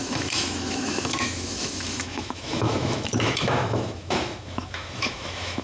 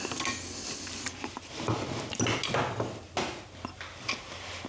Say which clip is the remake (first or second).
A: first